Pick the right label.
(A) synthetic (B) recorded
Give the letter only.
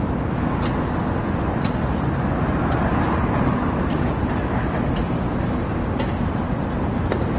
B